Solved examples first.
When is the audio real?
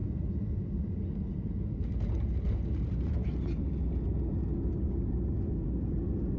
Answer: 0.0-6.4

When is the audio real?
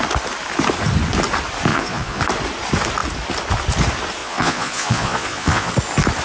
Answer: 0.0-1.7; 2.2-4.2; 5.7-6.2